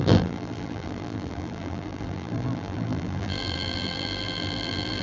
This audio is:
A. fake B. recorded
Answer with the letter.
A